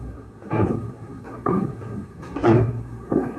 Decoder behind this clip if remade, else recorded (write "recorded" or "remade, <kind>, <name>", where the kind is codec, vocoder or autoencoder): remade, codec, SNAC